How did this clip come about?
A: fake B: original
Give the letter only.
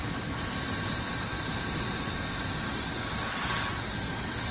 B